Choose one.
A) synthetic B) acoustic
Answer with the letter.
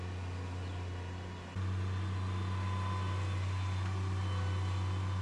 B